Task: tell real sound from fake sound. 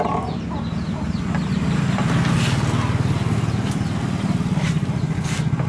real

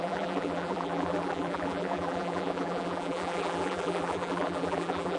fake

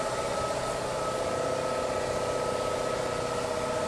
real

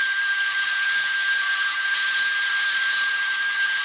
fake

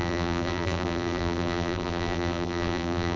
fake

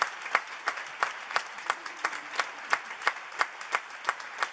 real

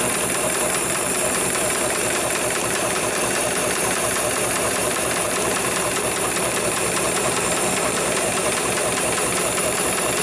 fake